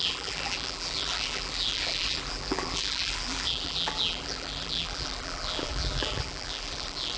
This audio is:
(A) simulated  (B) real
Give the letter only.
A